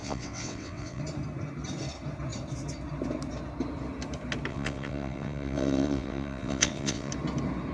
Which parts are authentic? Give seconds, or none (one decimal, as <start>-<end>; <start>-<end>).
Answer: 1.0-4.5; 7.1-7.7